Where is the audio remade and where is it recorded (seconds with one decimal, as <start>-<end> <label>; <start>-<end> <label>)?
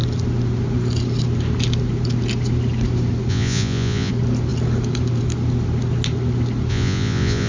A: 0.0-3.3 recorded; 3.3-4.1 remade; 4.1-6.7 recorded; 6.7-7.5 remade